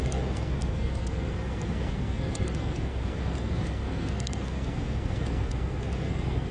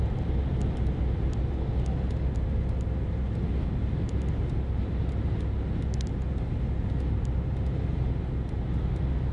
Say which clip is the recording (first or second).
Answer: second